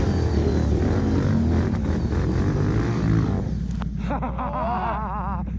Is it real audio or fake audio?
real